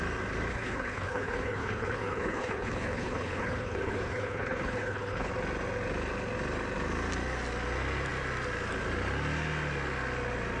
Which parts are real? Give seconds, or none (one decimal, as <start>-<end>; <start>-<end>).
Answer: 0.0-0.5; 5.3-10.6